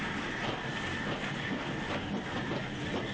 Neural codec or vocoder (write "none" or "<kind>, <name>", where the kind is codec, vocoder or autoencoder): none